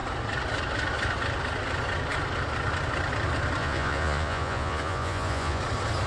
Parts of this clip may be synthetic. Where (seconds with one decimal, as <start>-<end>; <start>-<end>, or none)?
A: 3.6-5.6